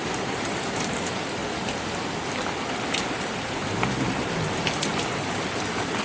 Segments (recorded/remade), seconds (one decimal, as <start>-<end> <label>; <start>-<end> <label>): 0.0-1.4 remade; 1.4-3.1 recorded; 3.1-4.9 remade; 4.9-6.0 recorded